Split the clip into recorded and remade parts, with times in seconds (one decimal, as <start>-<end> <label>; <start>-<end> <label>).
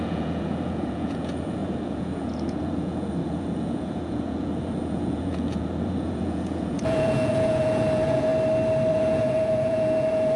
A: 0.0-8.3 remade; 8.3-8.9 recorded; 8.9-10.4 remade